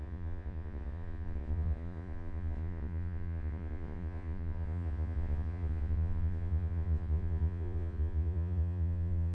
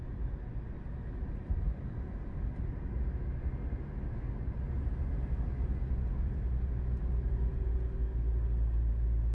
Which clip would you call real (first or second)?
second